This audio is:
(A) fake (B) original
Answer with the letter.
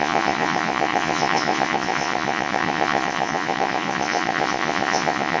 A